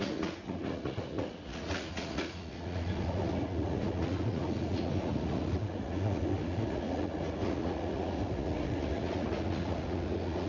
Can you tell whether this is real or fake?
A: fake